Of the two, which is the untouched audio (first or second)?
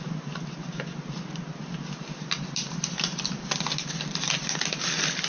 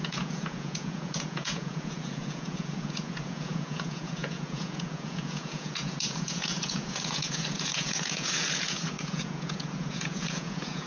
first